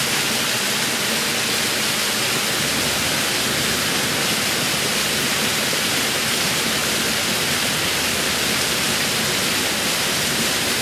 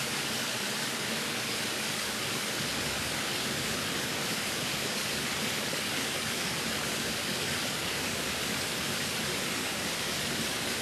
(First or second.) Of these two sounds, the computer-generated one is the second